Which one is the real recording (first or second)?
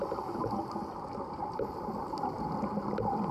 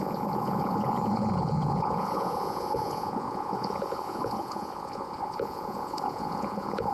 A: first